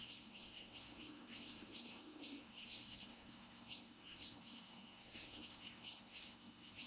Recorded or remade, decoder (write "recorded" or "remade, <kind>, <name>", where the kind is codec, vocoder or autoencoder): remade, codec, SNAC